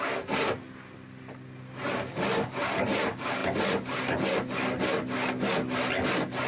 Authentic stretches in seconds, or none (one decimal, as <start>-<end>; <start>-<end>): 0.0-6.5